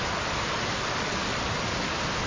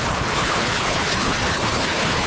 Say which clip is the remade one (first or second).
second